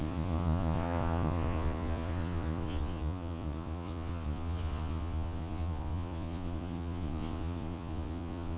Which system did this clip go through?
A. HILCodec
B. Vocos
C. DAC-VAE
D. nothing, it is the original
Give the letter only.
B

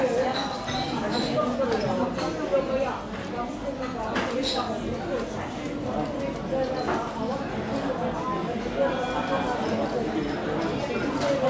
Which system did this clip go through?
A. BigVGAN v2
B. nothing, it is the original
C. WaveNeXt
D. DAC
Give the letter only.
B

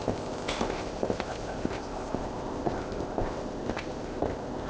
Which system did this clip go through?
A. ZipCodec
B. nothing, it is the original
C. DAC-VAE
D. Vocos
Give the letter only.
A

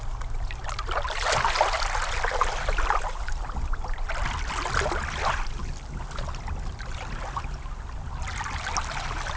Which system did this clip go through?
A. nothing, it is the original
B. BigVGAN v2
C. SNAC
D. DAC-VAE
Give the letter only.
A